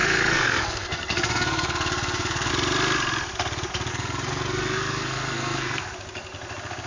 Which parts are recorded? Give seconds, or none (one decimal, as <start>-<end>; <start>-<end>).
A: 2.5-3.9; 5.8-6.9